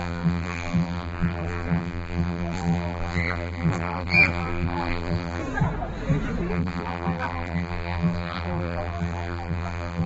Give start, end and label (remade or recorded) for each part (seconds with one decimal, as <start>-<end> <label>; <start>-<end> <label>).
0.0-5.4 remade; 5.4-6.5 recorded; 6.5-10.1 remade